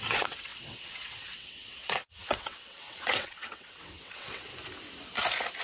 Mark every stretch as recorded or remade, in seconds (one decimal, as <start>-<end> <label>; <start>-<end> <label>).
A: 0.0-4.5 remade; 4.5-5.6 recorded